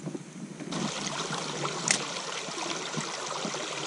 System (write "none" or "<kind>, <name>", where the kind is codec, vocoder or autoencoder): none